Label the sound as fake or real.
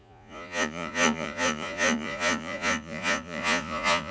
fake